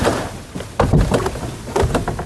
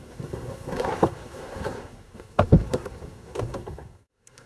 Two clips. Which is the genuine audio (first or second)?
first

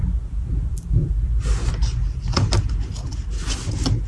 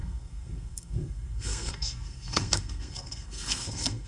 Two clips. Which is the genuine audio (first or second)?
first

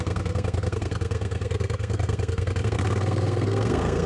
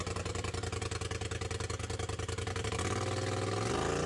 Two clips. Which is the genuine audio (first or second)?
second